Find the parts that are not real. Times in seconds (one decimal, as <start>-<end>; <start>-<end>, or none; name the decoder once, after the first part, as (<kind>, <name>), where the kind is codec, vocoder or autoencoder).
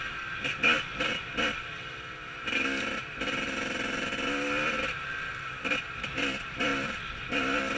none